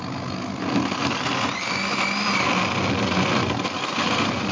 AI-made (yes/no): no